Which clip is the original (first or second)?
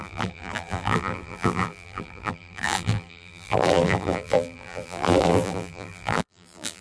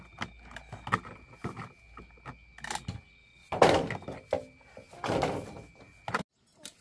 second